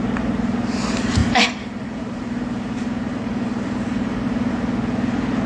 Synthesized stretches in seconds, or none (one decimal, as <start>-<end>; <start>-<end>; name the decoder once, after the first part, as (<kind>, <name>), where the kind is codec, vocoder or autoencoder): 1.2-4.5 (vocoder, BigVGAN v2)